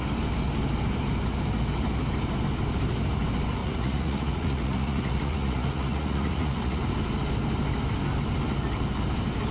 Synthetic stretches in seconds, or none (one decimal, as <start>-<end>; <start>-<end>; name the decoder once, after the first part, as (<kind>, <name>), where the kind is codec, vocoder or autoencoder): 3.6-6.8 (vocoder, Vocos)